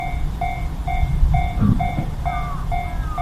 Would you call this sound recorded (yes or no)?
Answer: yes